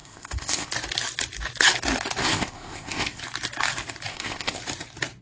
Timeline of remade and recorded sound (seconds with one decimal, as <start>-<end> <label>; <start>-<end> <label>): 0.0-0.7 remade; 0.7-2.2 recorded; 2.2-3.2 remade; 3.2-4.1 recorded; 4.1-4.6 remade; 4.6-5.2 recorded